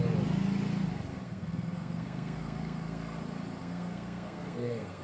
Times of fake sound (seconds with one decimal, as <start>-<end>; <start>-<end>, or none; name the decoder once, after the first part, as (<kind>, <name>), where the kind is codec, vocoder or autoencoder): 1.1-3.2 (codec, SNAC); 3.6-5.0